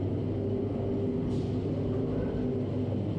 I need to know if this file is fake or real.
real